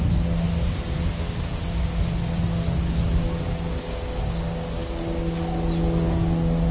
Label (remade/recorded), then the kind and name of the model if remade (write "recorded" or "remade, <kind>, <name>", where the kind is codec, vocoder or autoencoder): recorded